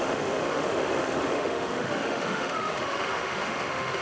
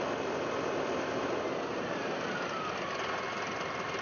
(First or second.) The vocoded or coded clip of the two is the first